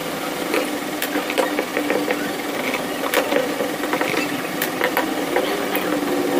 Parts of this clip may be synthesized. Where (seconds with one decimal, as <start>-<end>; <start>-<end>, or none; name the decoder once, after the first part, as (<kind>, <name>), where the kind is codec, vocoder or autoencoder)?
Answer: 0.0-0.6 (vocoder, BigVGAN v2)